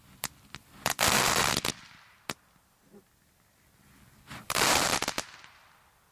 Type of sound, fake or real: real